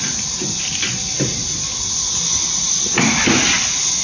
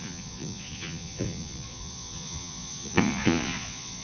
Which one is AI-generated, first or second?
second